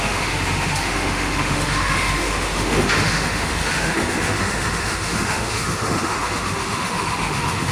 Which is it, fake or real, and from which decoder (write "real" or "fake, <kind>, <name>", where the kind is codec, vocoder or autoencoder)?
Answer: fake, autoencoder, DAC-VAE